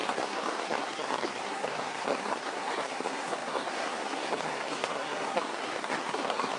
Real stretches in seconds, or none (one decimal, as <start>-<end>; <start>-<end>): none

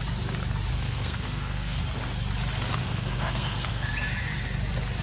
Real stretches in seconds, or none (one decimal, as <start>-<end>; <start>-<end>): 0.0-0.7; 1.8-2.8; 3.9-5.0

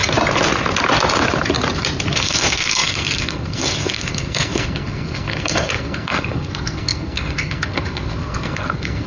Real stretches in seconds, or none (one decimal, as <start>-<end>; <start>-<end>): 0.0-2.2

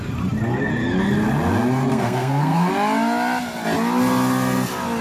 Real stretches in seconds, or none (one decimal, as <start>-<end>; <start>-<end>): 0.0-1.9; 2.7-5.0

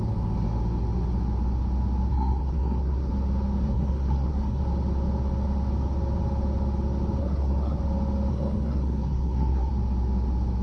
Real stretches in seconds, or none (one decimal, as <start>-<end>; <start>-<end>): 0.0-2.1; 3.1-3.6; 4.6-7.2; 7.8-8.3; 9.7-10.6

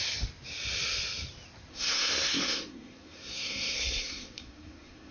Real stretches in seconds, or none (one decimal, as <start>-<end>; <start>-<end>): 0.0-1.7

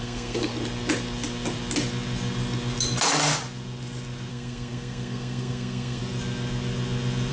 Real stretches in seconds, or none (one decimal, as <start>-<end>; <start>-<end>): 0.5-4.3; 6.0-7.3

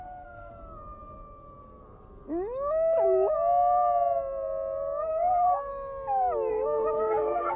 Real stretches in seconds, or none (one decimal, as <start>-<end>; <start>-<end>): 0.5-5.1; 5.7-6.5